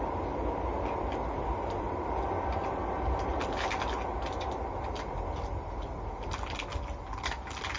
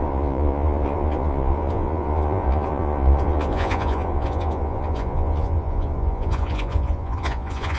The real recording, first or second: first